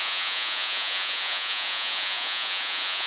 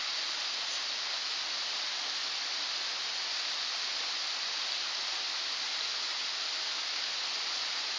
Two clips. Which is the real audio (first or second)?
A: second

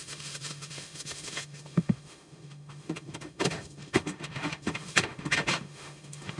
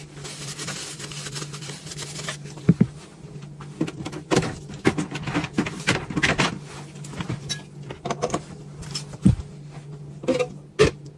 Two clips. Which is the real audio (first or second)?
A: second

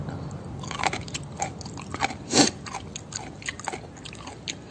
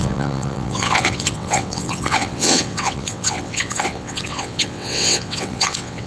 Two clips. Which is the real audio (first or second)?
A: first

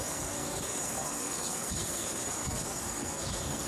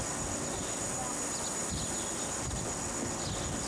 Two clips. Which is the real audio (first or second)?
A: second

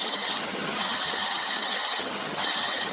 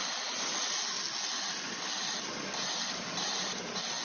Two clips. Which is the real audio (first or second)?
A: second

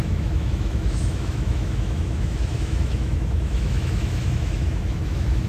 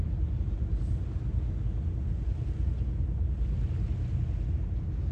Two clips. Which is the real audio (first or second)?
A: second